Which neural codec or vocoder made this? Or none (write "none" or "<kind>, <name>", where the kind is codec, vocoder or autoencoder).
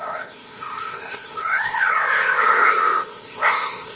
codec, ZipCodec